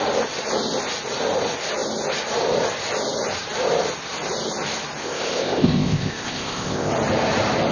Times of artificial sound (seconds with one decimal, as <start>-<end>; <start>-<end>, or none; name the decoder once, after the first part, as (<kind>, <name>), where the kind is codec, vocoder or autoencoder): 5.0-6.9 (codec, ZipCodec)

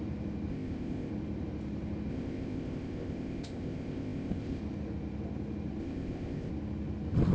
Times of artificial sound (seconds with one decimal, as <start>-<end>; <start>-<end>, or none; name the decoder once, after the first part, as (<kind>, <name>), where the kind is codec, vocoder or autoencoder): 0.5-1.1 (codec, ZipCodec); 2.1-4.6; 5.8-6.5

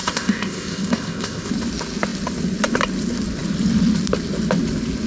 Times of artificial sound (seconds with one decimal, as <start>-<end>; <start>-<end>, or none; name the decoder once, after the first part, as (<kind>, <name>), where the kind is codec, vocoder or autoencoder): 0.0-1.5 (codec, ZipCodec)

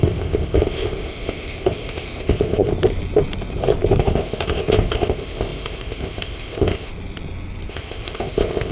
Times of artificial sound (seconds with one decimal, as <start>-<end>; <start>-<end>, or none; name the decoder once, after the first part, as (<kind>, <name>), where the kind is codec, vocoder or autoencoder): 0.0-2.7 (codec, ZipCodec); 4.0-6.9; 7.7-8.7

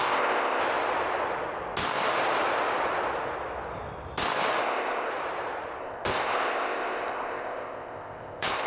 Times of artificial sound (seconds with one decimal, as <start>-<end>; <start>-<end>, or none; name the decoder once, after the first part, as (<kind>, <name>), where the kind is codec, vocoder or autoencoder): 0.0-0.6 (codec, ZipCodec); 4.6-5.1; 5.8-8.7

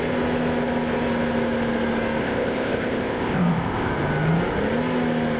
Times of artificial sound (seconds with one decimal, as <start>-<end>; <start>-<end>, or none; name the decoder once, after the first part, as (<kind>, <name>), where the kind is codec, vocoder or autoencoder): 2.2-3.9 (codec, ZipCodec)

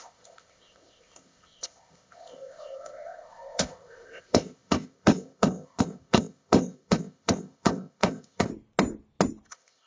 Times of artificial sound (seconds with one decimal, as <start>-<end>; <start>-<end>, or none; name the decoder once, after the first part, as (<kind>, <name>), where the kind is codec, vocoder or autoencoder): 0.0-8.5 (codec, ZipCodec); 9.5-9.9